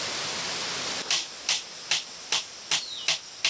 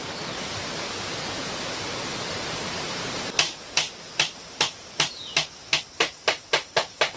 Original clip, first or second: first